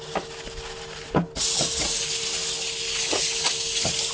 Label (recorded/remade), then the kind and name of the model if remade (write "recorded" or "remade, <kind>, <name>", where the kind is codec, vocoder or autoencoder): recorded